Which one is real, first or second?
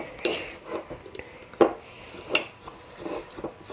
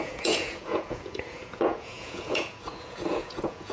first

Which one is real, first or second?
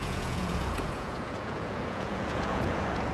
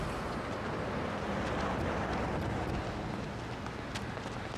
second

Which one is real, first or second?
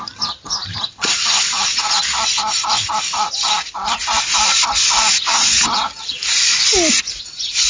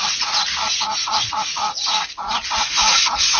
first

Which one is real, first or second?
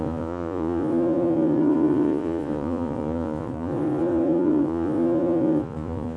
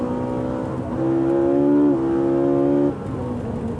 second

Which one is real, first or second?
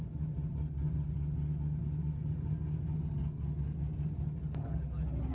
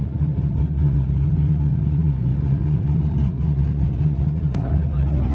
first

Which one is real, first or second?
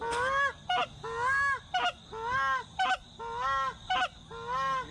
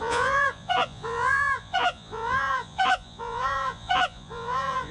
first